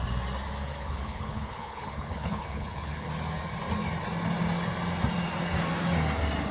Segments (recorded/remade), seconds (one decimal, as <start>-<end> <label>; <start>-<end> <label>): 0.0-0.7 recorded; 0.7-3.1 remade; 3.1-6.5 recorded